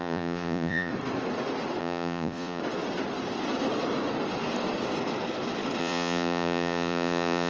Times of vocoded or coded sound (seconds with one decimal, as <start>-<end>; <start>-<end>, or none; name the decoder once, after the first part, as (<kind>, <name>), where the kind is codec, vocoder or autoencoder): 0.0-0.9 (vocoder, Vocos); 1.8-2.6; 5.8-7.5